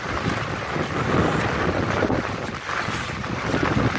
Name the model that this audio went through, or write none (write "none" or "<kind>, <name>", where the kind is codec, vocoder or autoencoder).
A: none